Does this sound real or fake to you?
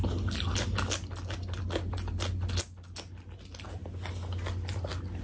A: real